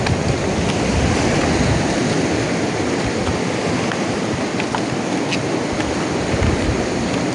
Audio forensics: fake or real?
real